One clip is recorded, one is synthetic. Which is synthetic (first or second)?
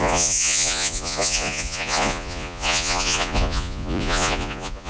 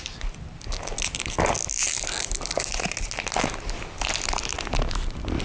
first